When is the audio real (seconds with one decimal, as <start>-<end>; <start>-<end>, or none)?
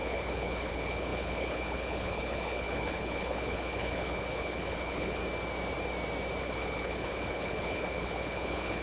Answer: 5.2-6.4